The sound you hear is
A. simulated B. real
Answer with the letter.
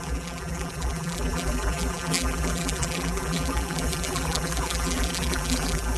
A